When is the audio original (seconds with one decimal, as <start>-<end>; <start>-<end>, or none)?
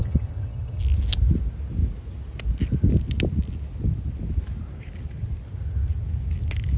0.8-6.8